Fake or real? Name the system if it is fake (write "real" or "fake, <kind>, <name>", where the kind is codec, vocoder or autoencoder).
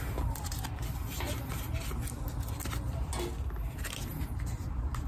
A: real